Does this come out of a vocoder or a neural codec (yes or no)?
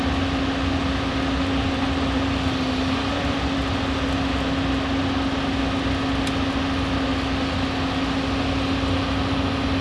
no